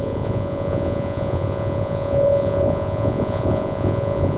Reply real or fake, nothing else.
fake